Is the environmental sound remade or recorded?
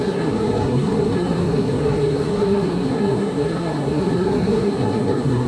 remade